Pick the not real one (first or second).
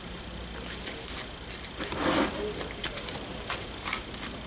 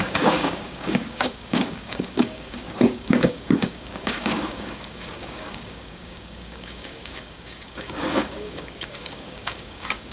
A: second